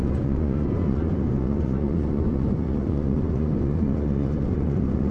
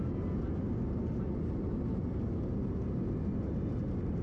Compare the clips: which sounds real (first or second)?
second